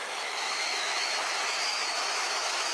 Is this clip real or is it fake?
fake